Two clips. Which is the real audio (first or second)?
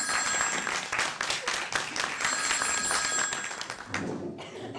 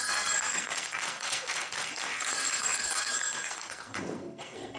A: first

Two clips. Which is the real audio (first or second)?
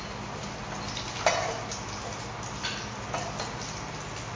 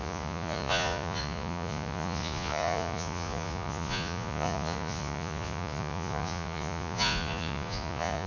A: first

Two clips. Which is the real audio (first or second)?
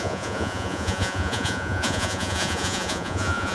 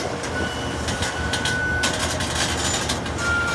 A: second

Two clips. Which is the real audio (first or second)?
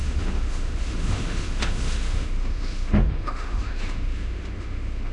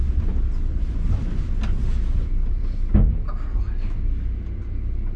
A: second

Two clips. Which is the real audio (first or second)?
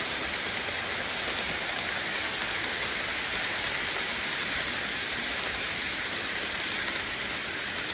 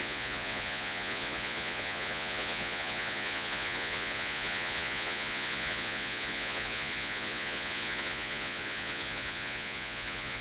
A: first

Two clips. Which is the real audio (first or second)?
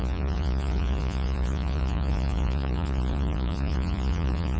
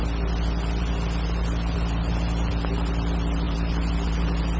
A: second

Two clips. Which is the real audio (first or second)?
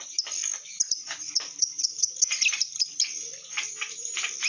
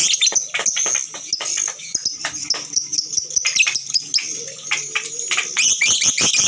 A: second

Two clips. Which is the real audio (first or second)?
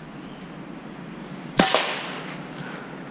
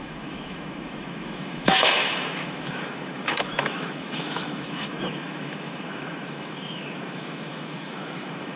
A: first